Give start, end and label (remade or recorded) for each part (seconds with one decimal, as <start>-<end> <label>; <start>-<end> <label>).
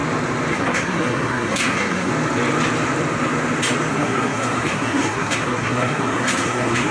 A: 0.0-0.5 recorded; 0.5-2.1 remade; 2.1-3.9 recorded; 3.9-6.9 remade